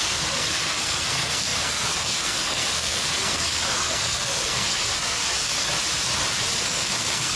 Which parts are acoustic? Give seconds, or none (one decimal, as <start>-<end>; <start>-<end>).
5.7-6.6